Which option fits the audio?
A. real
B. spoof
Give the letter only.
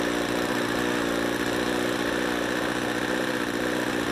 A